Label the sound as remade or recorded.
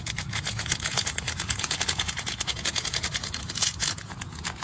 remade